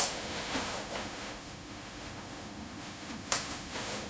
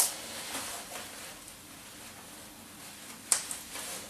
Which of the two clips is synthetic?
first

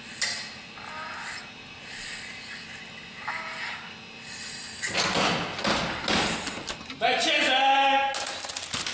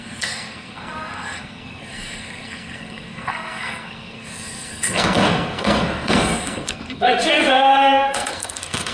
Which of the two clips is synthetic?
second